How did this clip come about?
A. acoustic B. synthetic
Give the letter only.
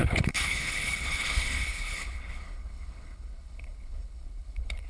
B